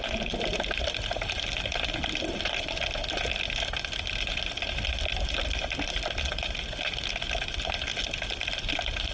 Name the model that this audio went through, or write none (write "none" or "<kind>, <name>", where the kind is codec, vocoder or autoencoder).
none